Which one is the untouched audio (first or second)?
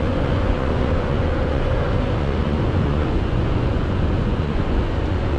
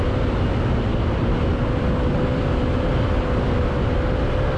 second